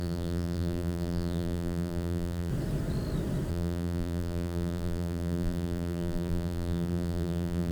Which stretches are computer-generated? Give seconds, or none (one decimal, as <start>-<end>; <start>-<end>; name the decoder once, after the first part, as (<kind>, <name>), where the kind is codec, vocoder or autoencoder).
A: 0.0-2.5 (vocoder, BigVGAN v2); 3.5-7.7